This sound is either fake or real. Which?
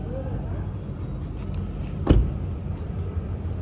real